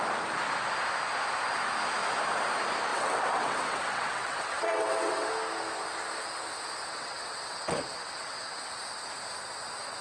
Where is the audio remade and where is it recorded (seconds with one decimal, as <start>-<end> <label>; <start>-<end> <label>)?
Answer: 0.0-2.9 recorded; 2.9-5.3 remade; 5.3-6.9 recorded; 6.9-8.7 remade; 8.7-10.0 recorded